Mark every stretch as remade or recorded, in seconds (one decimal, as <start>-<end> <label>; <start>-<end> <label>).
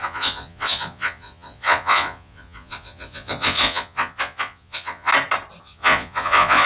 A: 0.0-5.1 remade; 5.1-5.6 recorded; 5.6-6.7 remade